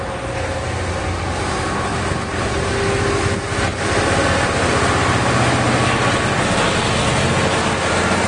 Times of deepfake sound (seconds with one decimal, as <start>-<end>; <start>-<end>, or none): none